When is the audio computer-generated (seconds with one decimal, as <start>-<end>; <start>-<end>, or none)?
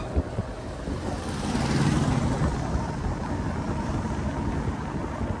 2.5-3.2